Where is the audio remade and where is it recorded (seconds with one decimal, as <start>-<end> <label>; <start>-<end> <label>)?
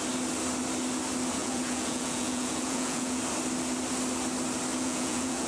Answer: 0.0-1.4 recorded; 1.4-3.2 remade; 3.2-4.7 recorded; 4.7-5.5 remade